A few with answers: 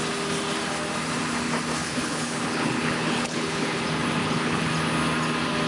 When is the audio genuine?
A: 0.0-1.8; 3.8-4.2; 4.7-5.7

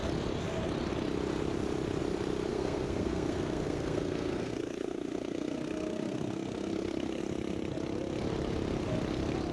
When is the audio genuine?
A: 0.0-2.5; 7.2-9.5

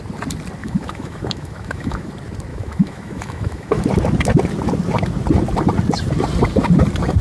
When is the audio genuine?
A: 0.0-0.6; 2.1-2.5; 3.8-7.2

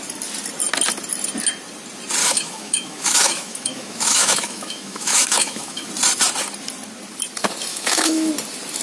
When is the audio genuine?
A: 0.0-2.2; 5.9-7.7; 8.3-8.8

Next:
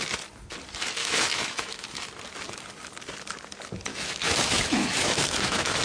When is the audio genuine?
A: 0.0-1.0; 2.1-3.9